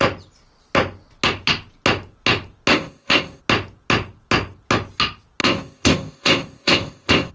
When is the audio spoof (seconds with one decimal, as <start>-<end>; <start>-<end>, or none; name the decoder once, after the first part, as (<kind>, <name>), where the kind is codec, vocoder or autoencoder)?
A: 2.7-3.4 (codec, ZipCodec); 5.4-7.3